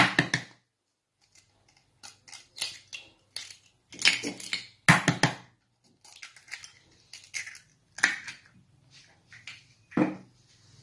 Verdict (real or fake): real